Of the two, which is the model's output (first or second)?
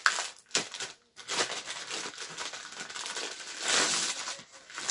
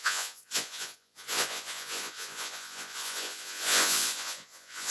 second